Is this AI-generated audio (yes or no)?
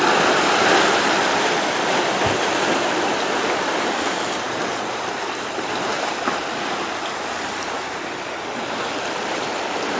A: yes